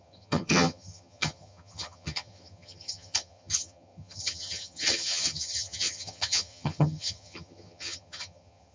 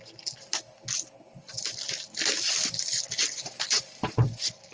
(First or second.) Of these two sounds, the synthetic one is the first